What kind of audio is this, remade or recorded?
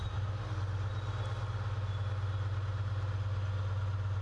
recorded